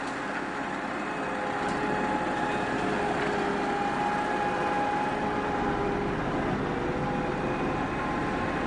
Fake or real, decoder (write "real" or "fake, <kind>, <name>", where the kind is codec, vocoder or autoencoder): real